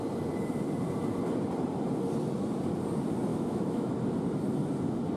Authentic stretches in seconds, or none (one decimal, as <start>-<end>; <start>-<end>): 0.0-3.3; 3.9-5.2